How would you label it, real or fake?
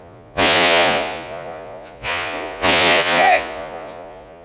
fake